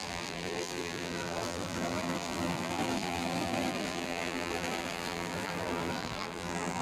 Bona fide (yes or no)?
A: no